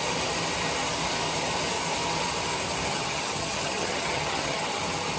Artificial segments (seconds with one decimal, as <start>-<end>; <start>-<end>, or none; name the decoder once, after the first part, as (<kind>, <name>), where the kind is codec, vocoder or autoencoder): 2.9-4.8 (vocoder, HiFi-GAN)